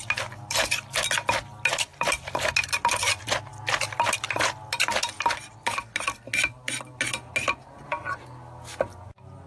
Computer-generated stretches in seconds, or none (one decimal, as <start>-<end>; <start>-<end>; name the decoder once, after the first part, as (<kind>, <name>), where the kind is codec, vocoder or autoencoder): 1.9-2.5 (vocoder, BigVGAN v2)